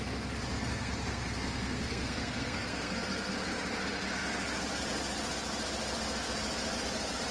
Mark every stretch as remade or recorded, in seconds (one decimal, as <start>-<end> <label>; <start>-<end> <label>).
0.0-0.5 recorded; 0.5-3.3 remade; 3.3-7.3 recorded